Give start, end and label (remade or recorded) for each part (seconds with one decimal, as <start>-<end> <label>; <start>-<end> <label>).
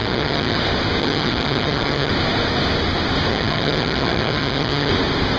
0.0-0.6 remade; 0.6-1.0 recorded; 1.0-2.1 remade; 2.1-3.3 recorded; 3.3-4.9 remade; 4.9-5.4 recorded